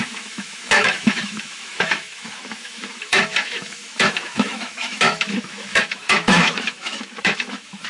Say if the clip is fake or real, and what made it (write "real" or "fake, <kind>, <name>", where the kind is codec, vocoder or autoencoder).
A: fake, autoencoder, DAC-VAE